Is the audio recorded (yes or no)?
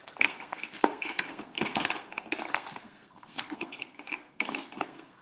no